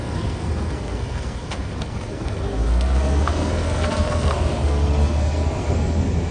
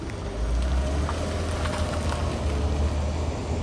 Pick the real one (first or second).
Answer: second